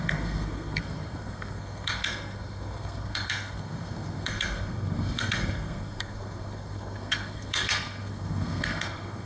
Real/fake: fake